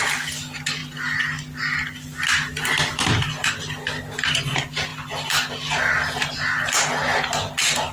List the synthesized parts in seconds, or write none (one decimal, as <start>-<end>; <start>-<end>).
0.8-2.7; 3.4-4.0; 4.9-5.5